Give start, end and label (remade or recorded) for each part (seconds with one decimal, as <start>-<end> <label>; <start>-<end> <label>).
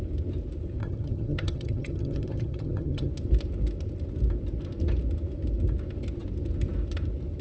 0.0-0.8 recorded; 0.8-3.1 remade; 3.1-7.4 recorded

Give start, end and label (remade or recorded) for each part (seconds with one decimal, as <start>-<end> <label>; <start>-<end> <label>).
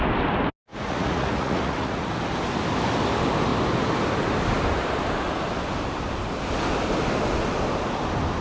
0.0-0.7 recorded; 0.7-2.1 remade; 2.1-8.4 recorded